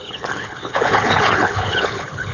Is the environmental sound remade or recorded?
remade